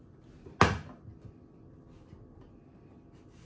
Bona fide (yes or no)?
yes